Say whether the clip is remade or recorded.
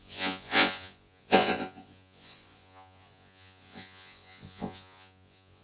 remade